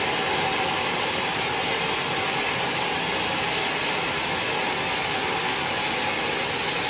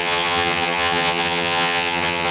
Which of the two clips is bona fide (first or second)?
first